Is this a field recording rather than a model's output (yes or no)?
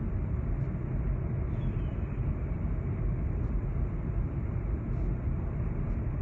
yes